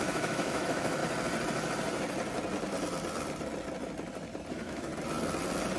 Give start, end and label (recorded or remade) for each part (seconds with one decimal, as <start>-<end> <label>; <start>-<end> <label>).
0.0-1.0 remade; 1.0-4.5 recorded; 4.5-4.9 remade; 4.9-5.8 recorded